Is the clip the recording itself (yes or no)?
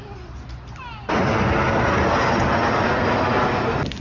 yes